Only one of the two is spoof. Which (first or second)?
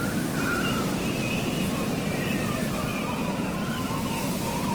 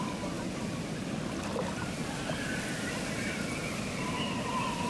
second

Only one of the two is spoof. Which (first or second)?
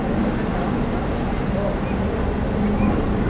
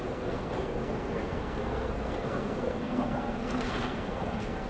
second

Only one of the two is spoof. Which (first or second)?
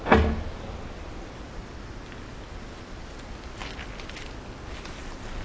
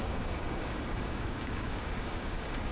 second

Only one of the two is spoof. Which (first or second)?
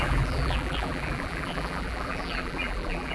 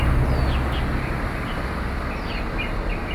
first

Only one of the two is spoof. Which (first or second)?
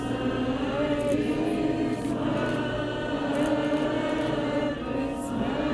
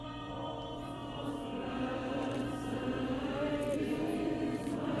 second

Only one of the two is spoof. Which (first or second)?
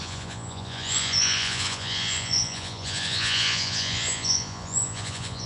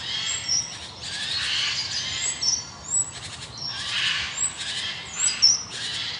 first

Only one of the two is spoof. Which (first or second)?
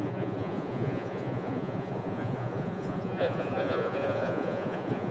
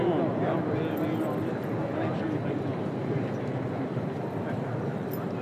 first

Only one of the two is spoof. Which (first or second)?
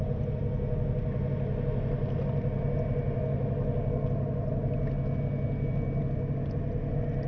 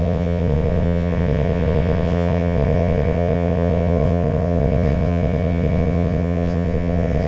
second